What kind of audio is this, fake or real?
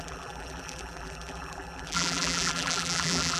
fake